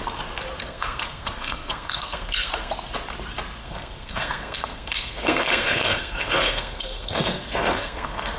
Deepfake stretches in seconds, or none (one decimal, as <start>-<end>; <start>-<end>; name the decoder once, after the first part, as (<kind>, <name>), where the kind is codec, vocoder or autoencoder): 0.6-2.7 (codec, SNAC); 3.6-8.4